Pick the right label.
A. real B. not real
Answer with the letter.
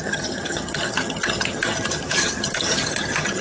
B